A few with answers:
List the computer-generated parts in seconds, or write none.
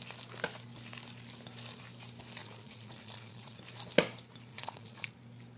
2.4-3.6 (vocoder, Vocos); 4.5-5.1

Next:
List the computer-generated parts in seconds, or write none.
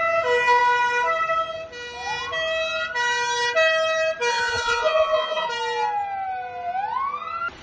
4.3-5.5 (vocoder, Vocos)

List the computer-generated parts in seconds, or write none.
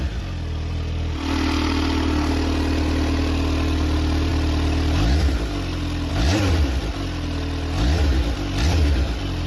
none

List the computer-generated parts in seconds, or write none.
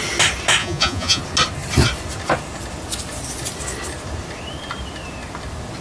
0.6-1.2 (vocoder, Vocos)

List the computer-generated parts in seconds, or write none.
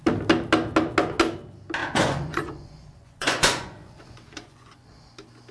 1.8-5.1 (vocoder, Vocos)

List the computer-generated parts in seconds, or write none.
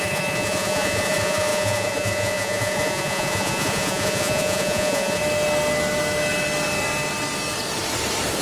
0.0-5.2 (vocoder, Vocos)